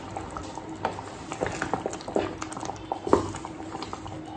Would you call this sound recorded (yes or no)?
yes